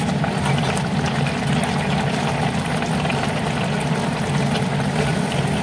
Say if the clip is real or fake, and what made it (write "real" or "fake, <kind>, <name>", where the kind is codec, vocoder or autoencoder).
real